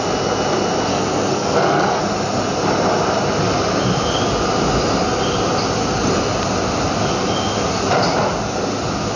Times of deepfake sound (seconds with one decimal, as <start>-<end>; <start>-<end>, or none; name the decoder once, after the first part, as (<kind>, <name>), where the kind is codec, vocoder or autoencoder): 0.9-2.0 (codec, SNAC)